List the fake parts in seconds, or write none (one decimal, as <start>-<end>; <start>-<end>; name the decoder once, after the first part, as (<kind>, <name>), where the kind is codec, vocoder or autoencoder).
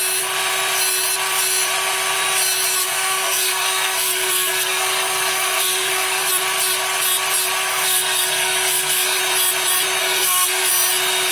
2.8-6.3 (codec, SNAC); 7.7-9.2; 10.0-10.7